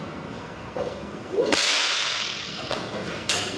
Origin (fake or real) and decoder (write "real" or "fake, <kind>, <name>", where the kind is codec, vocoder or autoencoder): fake, codec, SNAC